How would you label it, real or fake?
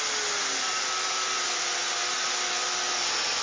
real